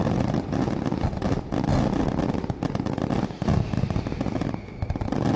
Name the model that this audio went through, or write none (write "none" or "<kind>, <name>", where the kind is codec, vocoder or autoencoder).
none